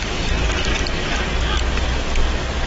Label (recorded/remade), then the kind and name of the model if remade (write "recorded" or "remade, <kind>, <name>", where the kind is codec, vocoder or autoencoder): recorded